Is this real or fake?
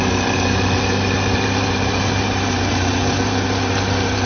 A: fake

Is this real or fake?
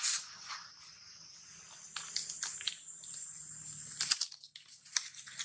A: real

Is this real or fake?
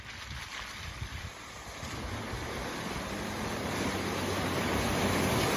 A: real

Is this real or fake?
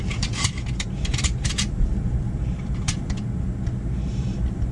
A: fake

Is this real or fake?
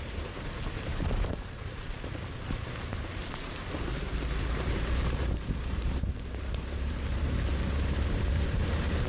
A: fake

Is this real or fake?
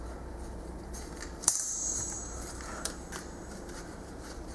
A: fake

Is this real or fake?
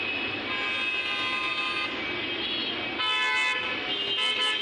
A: real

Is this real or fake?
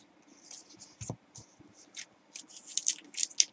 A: real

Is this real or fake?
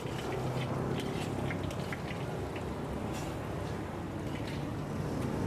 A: real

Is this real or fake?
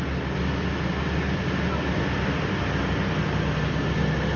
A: real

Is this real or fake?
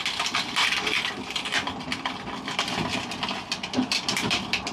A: fake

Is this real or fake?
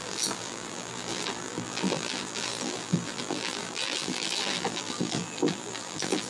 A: fake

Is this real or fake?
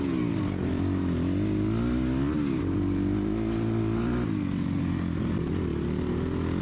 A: real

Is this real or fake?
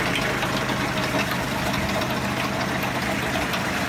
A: real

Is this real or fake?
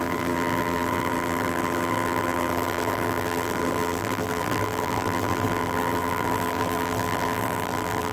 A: fake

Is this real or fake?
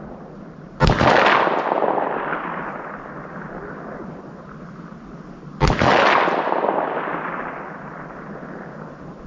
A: fake